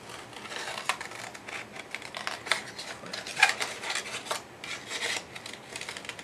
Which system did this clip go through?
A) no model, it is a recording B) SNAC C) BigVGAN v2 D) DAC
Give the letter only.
A